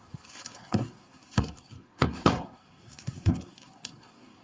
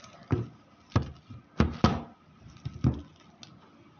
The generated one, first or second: first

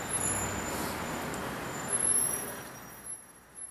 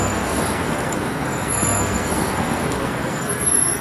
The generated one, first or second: second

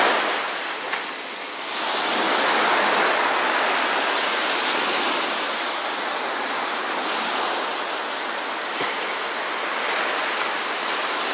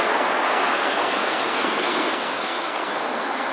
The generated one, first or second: second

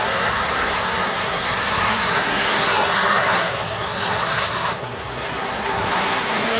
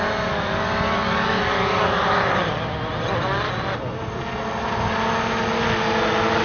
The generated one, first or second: first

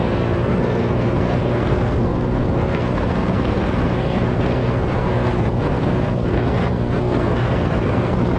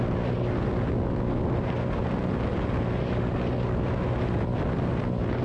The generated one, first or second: first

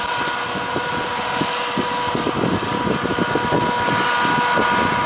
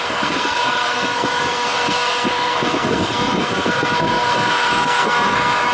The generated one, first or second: second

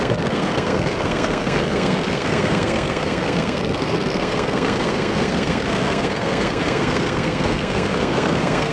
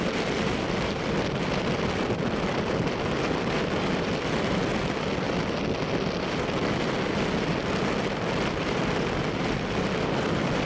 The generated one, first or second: first